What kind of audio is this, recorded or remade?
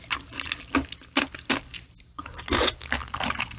recorded